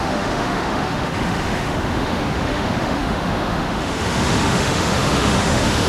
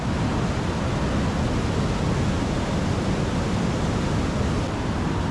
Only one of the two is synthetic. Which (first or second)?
first